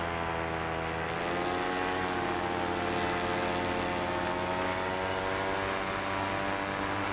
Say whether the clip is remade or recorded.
recorded